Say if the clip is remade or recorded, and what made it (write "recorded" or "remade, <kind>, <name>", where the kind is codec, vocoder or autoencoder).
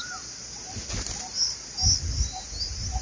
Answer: recorded